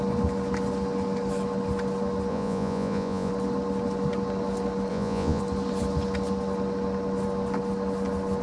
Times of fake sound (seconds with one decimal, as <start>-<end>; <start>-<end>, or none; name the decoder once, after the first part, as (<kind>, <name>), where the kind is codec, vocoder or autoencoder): 2.3-3.3 (vocoder, Vocos); 4.9-5.4